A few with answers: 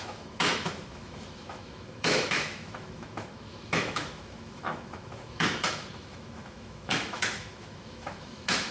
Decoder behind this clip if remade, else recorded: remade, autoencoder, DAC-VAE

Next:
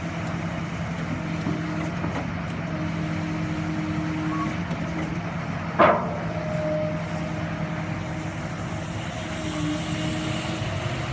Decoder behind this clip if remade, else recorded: recorded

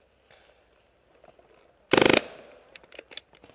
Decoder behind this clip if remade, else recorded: recorded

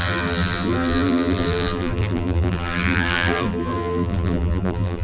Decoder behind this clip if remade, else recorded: remade, vocoder, BigVGAN v2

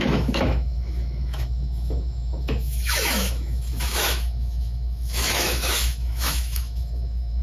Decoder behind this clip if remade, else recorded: remade, autoencoder, DAC-VAE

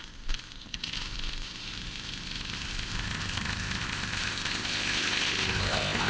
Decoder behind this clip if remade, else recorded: remade, codec, ZipCodec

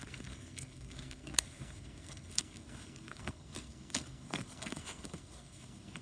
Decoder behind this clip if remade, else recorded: remade, codec, SNAC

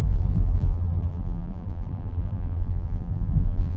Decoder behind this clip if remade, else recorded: remade, vocoder, BigVGAN v2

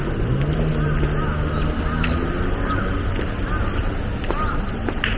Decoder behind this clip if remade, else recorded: recorded